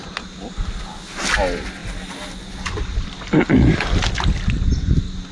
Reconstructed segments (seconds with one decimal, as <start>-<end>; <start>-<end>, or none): none